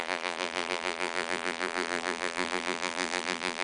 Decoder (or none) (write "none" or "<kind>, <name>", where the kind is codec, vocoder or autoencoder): vocoder, BigVGAN v2